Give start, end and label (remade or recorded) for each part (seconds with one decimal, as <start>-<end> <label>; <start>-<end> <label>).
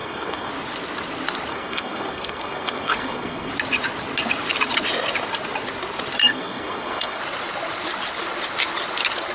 0.0-0.5 remade; 0.5-1.5 recorded; 1.5-3.5 remade; 3.5-6.2 recorded; 6.2-7.2 remade; 7.2-9.3 recorded